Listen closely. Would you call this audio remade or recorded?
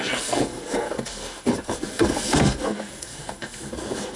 remade